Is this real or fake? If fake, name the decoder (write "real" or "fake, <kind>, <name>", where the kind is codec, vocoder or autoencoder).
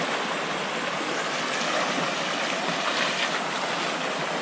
real